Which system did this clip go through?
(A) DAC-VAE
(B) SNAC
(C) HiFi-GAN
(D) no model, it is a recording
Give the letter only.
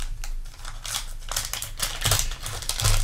D